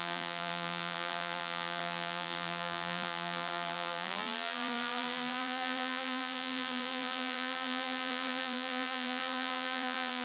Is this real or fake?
fake